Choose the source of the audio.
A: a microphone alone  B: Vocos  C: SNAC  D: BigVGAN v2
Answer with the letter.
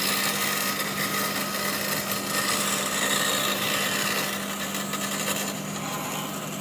A